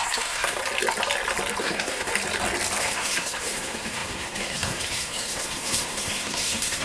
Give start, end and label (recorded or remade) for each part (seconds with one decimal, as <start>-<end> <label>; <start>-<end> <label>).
0.0-0.6 remade; 0.6-1.6 recorded; 1.6-2.1 remade; 2.1-2.8 recorded; 2.8-6.8 remade